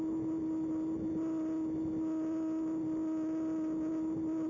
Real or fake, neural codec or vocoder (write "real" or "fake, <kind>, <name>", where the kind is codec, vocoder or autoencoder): real